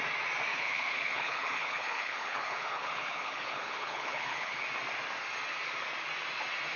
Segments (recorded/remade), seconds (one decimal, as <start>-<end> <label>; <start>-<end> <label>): 0.0-0.5 recorded; 0.5-4.6 remade; 4.6-6.8 recorded